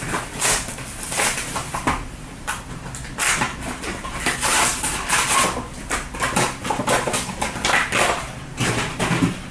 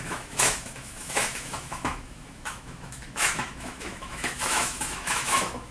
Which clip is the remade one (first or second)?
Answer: second